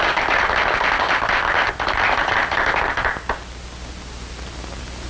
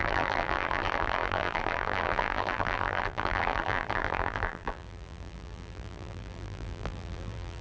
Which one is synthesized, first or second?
second